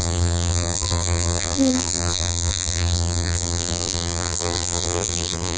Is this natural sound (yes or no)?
no